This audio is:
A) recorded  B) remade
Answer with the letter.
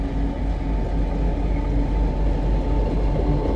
A